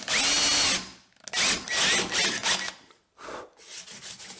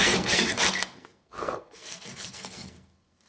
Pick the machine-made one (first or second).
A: second